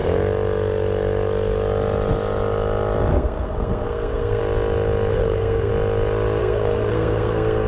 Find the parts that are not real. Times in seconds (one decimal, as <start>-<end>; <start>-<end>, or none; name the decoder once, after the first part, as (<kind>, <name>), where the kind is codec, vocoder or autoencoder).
3.1-4.4 (codec, SNAC); 5.1-5.7; 6.4-7.7